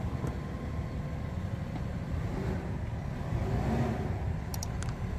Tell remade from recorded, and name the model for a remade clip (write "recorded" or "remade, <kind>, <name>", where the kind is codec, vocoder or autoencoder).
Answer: recorded